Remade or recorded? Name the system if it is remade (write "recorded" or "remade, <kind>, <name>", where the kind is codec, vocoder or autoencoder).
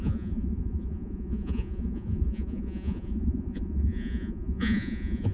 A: remade, vocoder, Vocos